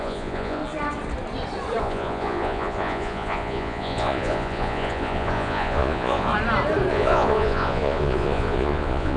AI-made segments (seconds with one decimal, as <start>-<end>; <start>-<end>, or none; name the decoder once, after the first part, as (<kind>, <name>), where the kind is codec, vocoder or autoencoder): 0.0-0.6 (vocoder, Vocos); 1.8-6.3; 6.9-9.2